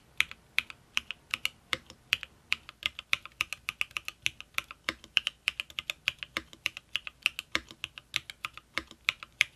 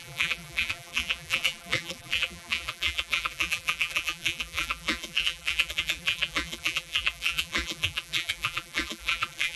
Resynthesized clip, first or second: second